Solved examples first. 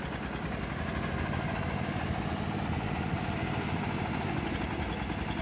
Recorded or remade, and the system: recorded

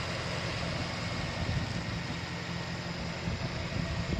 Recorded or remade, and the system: recorded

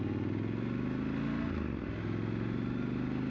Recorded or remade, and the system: recorded